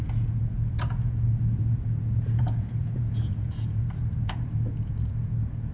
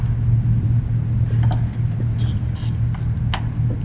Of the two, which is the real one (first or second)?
second